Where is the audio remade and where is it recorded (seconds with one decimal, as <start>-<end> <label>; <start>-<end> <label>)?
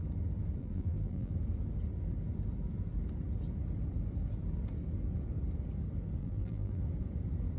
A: 0.0-0.6 recorded; 0.6-1.3 remade; 1.3-6.2 recorded; 6.2-6.8 remade; 6.8-7.6 recorded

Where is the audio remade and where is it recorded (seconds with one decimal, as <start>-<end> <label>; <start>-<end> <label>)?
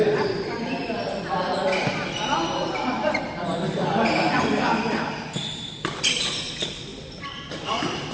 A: 0.0-8.1 recorded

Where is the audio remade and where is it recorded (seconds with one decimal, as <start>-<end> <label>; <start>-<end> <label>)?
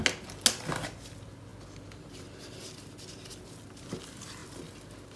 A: 0.0-5.2 recorded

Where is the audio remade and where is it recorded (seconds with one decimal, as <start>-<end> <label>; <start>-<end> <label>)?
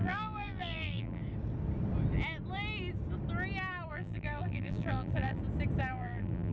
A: 0.0-1.2 remade; 1.2-3.9 recorded; 3.9-5.4 remade; 5.4-5.9 recorded; 5.9-6.5 remade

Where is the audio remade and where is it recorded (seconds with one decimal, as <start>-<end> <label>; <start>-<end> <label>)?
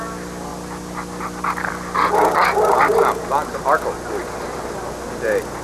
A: 0.0-0.5 recorded; 0.5-1.7 remade; 1.7-5.6 recorded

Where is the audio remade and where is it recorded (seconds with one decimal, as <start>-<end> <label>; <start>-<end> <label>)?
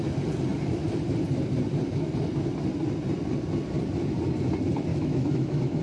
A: 0.0-4.9 recorded; 4.9-5.8 remade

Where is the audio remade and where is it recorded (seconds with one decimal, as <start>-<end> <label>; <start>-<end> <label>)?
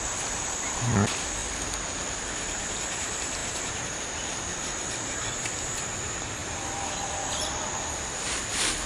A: 0.0-8.9 remade